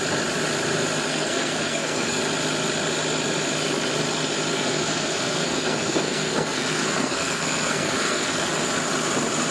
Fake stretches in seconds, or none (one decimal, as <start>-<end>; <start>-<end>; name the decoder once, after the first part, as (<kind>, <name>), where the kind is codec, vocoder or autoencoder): 1.1-2.2 (codec, SNAC); 4.5-8.6